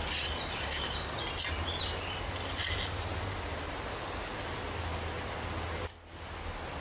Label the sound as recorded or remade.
recorded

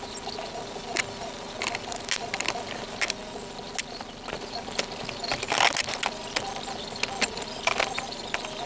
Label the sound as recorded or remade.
recorded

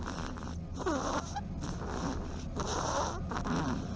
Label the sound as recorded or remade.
recorded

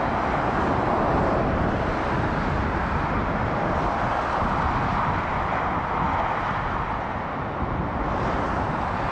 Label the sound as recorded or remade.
recorded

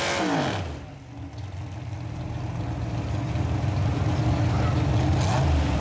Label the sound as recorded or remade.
recorded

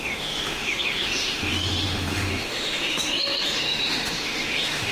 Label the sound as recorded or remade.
remade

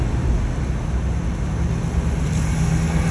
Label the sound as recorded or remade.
recorded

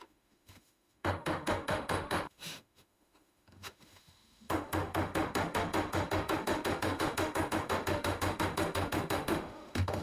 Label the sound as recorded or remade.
remade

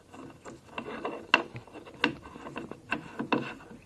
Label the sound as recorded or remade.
recorded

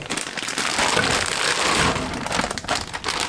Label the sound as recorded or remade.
recorded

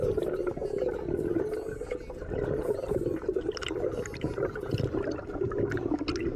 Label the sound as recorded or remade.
recorded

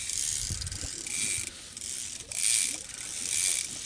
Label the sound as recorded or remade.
recorded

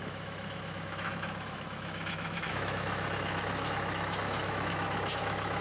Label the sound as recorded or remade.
remade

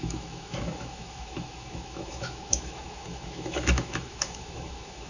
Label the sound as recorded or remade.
remade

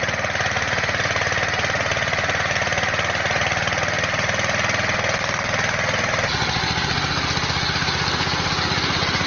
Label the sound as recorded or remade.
recorded